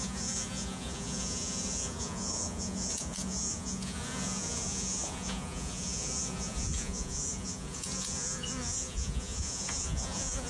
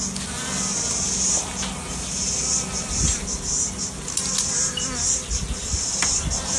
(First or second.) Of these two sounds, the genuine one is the second